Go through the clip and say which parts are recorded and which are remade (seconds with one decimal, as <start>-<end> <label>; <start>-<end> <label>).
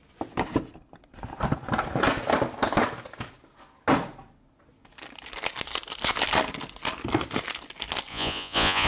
0.0-8.1 recorded; 8.1-8.9 remade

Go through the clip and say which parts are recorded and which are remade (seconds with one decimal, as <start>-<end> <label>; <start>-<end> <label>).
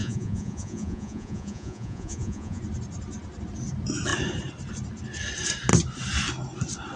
0.0-2.6 remade; 2.6-7.0 recorded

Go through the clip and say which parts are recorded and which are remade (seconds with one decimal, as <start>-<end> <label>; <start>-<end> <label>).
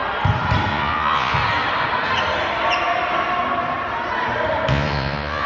0.0-0.7 recorded; 0.7-1.4 remade; 1.4-4.7 recorded; 4.7-5.5 remade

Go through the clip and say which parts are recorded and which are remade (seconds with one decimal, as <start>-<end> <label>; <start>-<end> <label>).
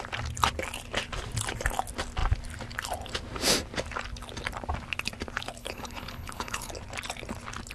0.0-5.6 recorded; 5.6-6.7 remade; 6.7-7.7 recorded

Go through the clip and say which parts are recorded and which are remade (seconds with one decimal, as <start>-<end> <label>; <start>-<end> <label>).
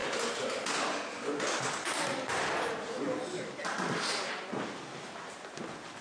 0.0-6.0 recorded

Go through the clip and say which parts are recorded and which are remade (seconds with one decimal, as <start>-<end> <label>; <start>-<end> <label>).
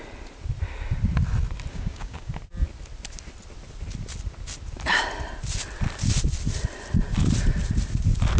0.0-1.7 recorded; 1.7-2.3 remade; 2.3-8.4 recorded